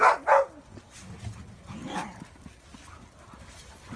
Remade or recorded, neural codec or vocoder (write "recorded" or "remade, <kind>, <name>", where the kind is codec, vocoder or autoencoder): recorded